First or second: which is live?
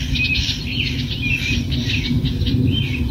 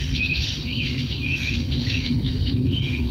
first